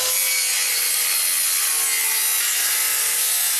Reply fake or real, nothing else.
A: real